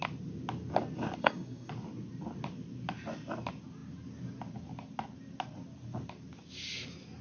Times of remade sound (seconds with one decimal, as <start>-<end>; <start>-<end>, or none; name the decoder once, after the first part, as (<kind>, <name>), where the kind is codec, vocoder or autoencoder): 1.2-1.7 (codec, SNAC)